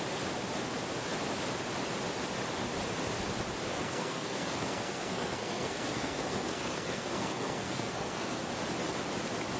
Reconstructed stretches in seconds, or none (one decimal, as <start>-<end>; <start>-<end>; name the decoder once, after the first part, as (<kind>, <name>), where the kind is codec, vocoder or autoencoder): 3.7-8.4 (codec, SNAC)

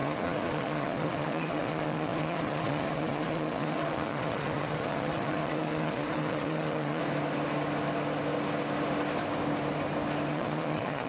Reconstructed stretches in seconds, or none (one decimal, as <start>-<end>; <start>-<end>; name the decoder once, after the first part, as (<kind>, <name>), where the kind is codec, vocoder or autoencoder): 0.0-7.0 (vocoder, Vocos); 10.3-11.1

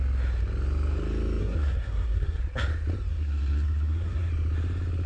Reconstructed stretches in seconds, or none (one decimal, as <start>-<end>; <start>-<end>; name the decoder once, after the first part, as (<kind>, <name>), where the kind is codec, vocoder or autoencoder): 1.4-2.4 (codec, SNAC); 3.1-4.3